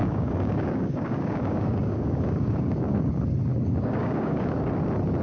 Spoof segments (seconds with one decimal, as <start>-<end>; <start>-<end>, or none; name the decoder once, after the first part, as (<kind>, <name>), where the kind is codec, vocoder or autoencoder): 0.0-3.1 (codec, DAC); 3.5-4.7